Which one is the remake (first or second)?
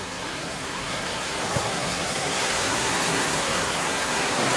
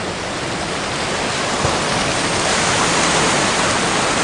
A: first